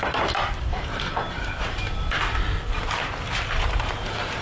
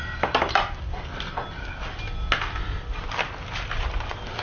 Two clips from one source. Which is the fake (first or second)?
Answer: first